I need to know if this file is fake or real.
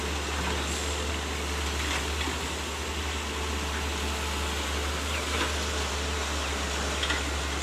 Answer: real